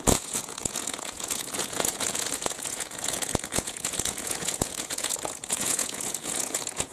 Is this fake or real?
fake